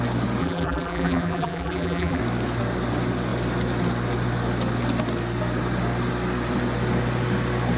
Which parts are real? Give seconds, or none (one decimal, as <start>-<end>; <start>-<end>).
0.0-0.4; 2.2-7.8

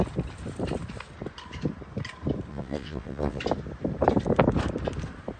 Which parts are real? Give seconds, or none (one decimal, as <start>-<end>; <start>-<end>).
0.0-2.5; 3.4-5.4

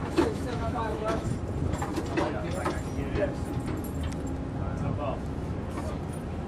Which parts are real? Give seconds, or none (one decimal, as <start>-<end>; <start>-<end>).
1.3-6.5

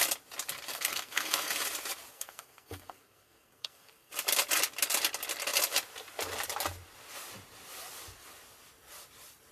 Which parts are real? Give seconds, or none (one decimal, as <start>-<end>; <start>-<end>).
0.0-0.7; 1.5-2.1; 4.1-9.5

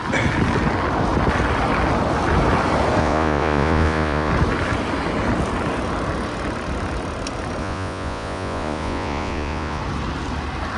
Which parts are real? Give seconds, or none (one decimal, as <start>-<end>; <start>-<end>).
0.0-3.0; 4.3-7.6; 9.8-10.8